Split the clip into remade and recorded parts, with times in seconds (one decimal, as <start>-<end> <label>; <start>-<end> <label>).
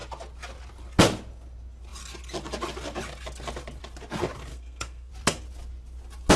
0.0-4.5 recorded; 4.5-5.1 remade; 5.1-6.4 recorded